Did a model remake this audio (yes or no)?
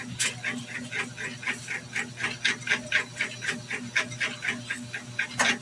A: no